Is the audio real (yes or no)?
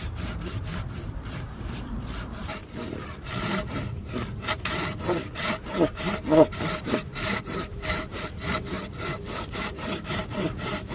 no